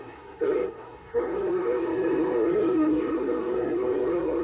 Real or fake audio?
fake